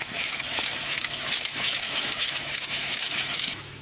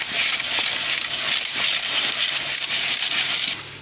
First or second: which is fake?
first